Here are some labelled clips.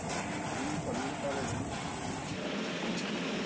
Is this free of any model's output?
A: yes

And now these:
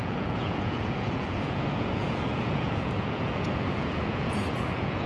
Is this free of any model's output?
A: no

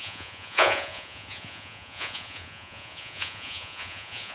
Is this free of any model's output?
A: no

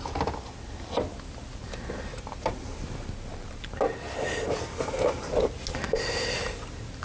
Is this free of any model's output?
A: yes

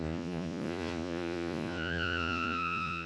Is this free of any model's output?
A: no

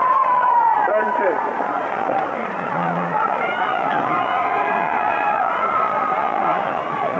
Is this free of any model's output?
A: no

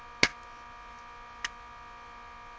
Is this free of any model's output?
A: yes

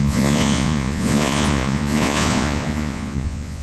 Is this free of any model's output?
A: no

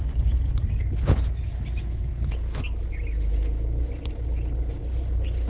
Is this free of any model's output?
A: yes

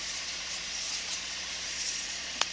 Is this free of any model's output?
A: no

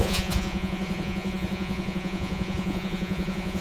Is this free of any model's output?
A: no